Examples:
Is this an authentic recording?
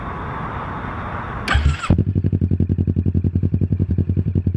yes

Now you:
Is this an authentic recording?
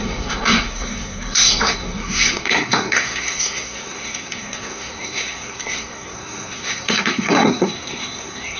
no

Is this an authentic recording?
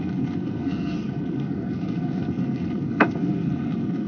no